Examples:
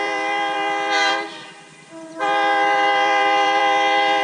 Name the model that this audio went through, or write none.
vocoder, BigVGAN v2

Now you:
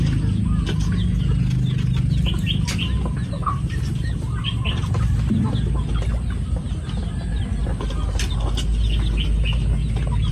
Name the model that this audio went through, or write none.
none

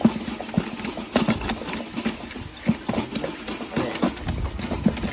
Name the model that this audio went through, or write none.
none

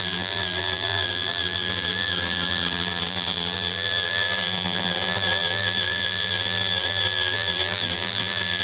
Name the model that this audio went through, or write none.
vocoder, BigVGAN v2